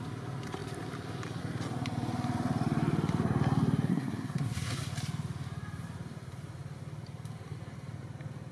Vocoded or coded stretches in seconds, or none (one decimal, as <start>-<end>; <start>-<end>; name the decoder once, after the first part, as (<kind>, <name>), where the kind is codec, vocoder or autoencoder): 3.9-4.8 (codec, SNAC)